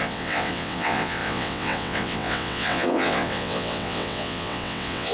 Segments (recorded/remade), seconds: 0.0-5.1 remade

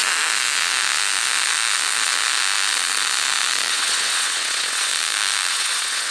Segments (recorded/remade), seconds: 0.0-3.7 recorded; 3.7-4.9 remade; 4.9-5.5 recorded; 5.5-6.1 remade

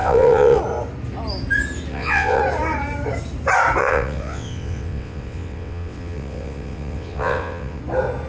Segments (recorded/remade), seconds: 0.0-0.6 remade; 0.6-1.9 recorded; 1.9-2.4 remade; 2.4-3.8 recorded; 3.8-7.8 remade; 7.8-8.3 recorded

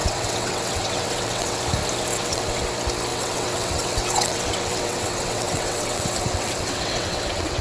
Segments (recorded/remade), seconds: 0.0-1.6 remade; 1.6-2.1 recorded; 2.1-2.7 remade; 2.7-3.1 recorded; 3.1-7.6 remade

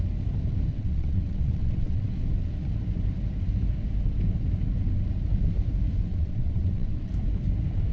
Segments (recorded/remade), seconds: 0.0-0.7 recorded; 0.7-2.1 remade; 2.1-6.1 recorded; 6.1-7.1 remade; 7.1-7.9 recorded

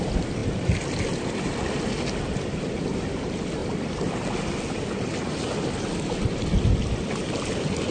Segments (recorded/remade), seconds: 0.0-7.9 recorded

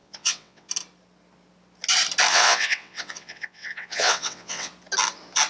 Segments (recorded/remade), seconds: 0.0-0.7 remade; 0.7-2.3 recorded; 2.3-4.7 remade; 4.7-5.5 recorded

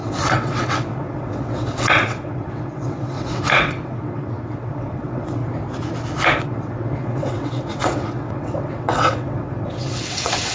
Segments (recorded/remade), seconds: 0.0-5.4 remade; 5.4-6.4 recorded; 6.4-10.5 remade